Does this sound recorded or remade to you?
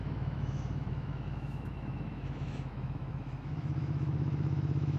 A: remade